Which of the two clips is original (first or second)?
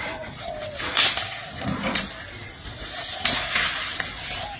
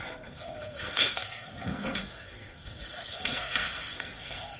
first